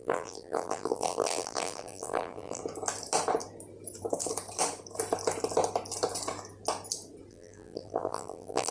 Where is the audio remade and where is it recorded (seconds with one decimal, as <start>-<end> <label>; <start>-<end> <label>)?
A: 0.0-2.6 remade; 2.6-7.3 recorded; 7.3-8.7 remade